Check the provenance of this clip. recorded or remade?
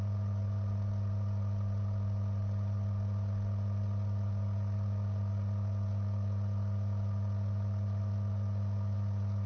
recorded